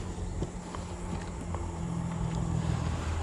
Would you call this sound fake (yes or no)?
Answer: no